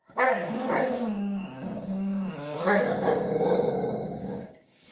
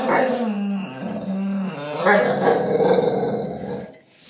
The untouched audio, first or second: second